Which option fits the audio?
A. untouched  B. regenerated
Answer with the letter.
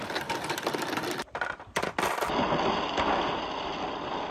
A